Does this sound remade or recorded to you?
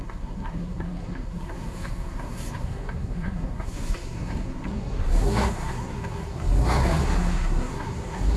remade